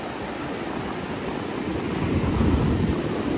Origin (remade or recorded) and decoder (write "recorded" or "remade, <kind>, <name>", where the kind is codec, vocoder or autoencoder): recorded